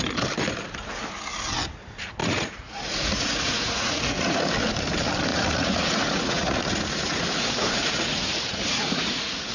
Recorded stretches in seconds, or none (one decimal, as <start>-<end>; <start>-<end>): 0.0-2.2; 4.4-5.3